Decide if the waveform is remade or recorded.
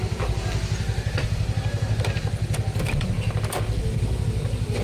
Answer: recorded